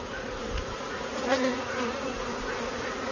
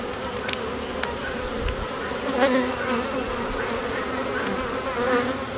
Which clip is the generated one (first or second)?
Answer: first